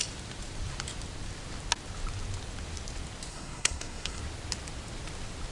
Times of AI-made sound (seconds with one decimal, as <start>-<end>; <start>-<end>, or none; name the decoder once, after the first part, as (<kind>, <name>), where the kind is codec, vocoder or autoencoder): 3.3-4.2 (codec, SNAC)